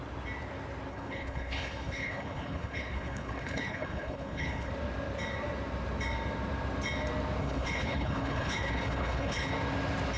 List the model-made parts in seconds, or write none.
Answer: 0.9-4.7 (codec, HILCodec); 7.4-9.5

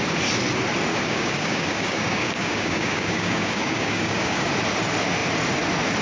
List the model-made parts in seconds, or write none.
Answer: 0.9-4.5 (codec, DAC)

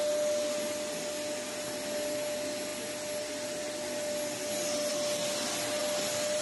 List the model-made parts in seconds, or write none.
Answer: none